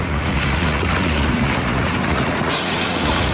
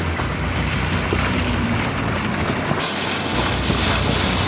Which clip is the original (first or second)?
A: second